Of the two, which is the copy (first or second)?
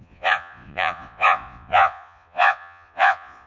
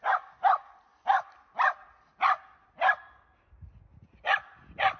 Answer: first